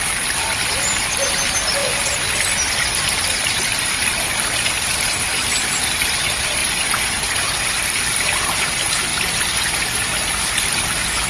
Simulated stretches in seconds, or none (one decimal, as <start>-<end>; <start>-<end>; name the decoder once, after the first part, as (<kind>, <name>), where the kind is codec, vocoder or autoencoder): none